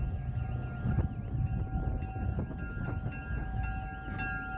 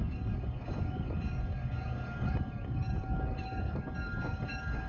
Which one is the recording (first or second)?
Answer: first